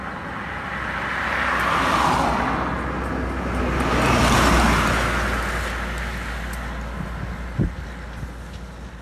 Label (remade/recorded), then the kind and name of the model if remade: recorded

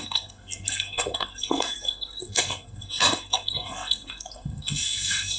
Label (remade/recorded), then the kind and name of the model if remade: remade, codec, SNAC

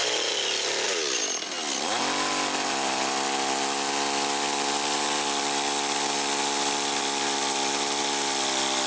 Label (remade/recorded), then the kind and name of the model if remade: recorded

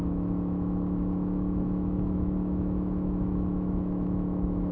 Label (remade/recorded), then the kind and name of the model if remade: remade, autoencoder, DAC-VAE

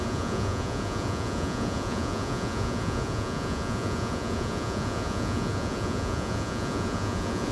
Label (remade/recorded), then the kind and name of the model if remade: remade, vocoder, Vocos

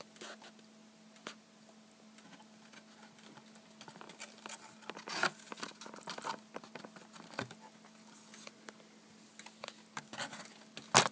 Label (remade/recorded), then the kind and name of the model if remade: recorded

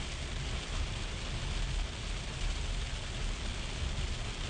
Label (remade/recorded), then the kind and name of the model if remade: recorded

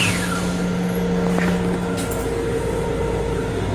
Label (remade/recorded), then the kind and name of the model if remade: recorded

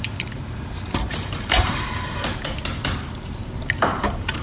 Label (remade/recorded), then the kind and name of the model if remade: remade, vocoder, BigVGAN v2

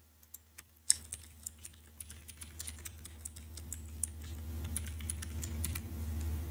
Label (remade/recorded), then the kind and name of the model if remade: recorded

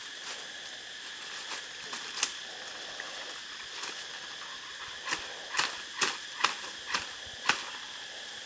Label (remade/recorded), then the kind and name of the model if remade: recorded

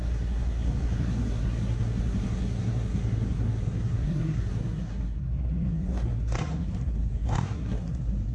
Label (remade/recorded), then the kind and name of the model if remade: remade, codec, SNAC